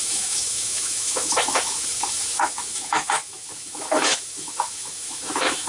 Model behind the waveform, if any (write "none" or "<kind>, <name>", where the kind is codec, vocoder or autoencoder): autoencoder, DAC-VAE